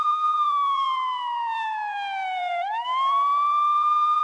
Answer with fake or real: fake